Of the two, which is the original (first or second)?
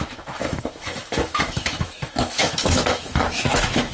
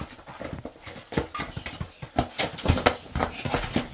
second